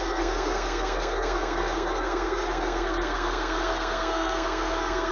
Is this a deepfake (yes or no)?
yes